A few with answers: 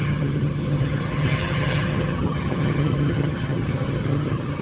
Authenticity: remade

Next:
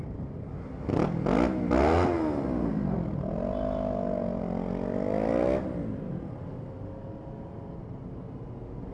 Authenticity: recorded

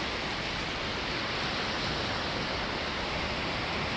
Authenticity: recorded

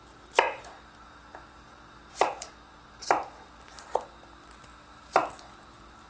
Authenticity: recorded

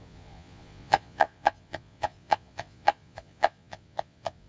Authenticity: remade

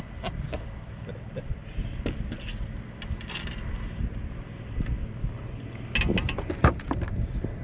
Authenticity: recorded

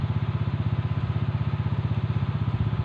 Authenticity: recorded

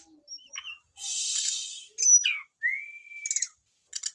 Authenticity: recorded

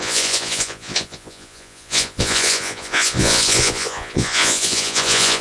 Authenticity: remade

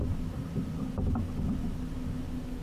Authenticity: recorded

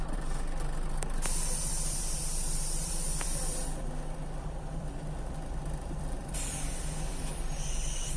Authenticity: remade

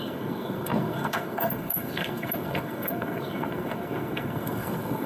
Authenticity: remade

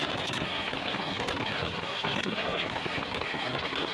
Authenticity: remade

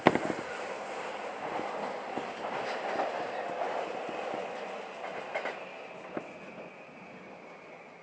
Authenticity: recorded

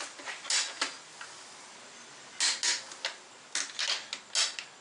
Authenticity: recorded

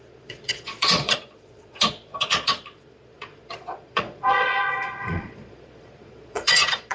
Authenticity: remade